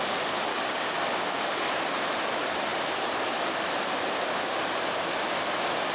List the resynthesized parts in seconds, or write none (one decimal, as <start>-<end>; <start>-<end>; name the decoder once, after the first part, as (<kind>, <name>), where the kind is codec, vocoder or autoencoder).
0.5-1.7 (codec, DAC)

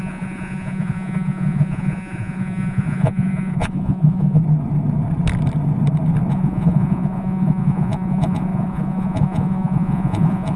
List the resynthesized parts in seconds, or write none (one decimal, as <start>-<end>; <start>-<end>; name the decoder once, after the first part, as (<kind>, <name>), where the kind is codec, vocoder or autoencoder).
0.0-4.4 (vocoder, Vocos); 6.3-10.6

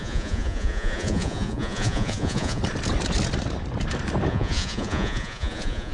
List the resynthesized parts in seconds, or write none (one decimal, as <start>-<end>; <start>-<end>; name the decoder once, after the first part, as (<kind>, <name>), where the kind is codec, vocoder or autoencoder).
0.0-2.6 (vocoder, Vocos); 4.3-5.9

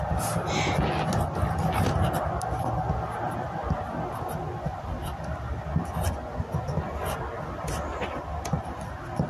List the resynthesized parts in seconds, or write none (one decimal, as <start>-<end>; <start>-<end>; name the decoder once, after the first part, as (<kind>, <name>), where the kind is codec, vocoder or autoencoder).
4.7-5.2 (vocoder, BigVGAN v2)

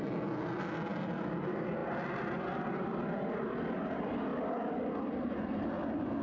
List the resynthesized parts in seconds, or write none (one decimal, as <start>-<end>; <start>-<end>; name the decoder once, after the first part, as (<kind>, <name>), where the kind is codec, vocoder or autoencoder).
4.3-4.9 (vocoder, BigVGAN v2)

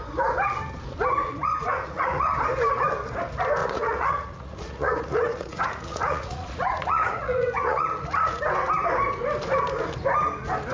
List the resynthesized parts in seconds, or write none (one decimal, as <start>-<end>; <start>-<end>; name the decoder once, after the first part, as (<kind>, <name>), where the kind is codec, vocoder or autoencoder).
1.2-2.3 (vocoder, Vocos); 3.6-8.4